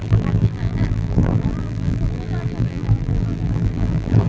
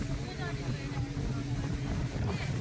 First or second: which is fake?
first